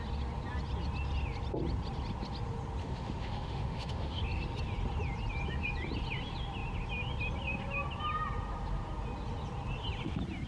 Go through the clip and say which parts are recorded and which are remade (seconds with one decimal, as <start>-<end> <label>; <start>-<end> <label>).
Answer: 0.0-2.8 recorded; 2.8-4.2 remade; 4.2-10.5 recorded